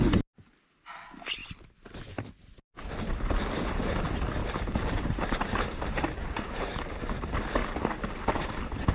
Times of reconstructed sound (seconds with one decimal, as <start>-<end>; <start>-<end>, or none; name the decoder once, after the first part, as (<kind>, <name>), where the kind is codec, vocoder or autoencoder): 4.4-7.0 (vocoder, BigVGAN v2)

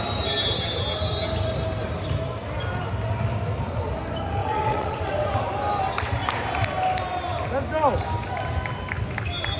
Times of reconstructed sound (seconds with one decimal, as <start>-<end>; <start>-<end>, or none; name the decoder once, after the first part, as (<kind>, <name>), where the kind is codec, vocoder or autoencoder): 4.4-5.1 (vocoder, WaveNeXt)